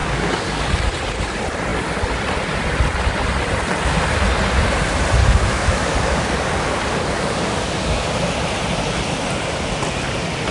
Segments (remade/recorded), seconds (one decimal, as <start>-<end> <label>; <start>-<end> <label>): 0.0-0.7 remade; 0.7-5.2 recorded; 5.2-8.1 remade; 8.1-10.5 recorded